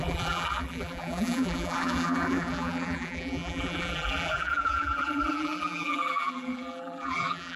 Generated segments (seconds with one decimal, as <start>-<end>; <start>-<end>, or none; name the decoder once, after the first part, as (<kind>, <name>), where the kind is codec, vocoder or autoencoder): 0.0-7.6 (vocoder, BigVGAN v2)